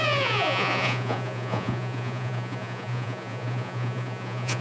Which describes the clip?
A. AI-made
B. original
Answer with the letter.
A